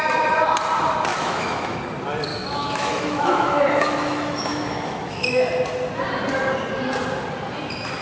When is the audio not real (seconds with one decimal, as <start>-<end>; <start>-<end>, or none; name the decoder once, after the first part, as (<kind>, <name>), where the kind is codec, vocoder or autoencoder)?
1.1-1.8 (autoencoder, DAC-VAE); 2.3-5.4